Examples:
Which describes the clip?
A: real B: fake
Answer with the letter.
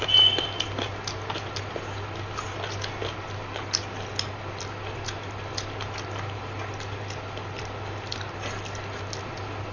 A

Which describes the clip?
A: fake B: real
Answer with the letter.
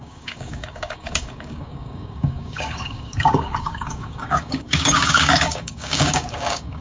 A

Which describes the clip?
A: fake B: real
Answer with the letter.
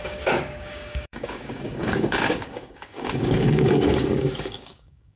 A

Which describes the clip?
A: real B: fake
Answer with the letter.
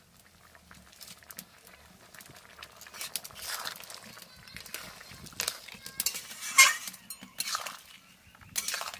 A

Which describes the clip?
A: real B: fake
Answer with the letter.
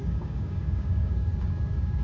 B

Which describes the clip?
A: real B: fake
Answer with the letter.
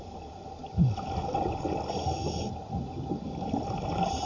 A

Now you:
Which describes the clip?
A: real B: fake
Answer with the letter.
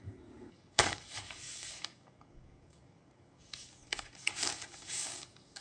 B